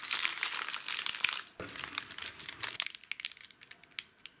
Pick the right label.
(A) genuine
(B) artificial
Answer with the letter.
A